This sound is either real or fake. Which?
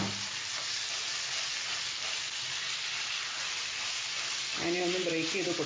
real